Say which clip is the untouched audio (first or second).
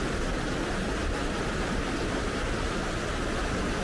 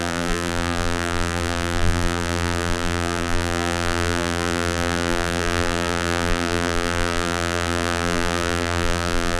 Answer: first